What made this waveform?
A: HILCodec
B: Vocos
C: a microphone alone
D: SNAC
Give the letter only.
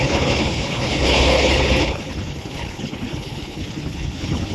A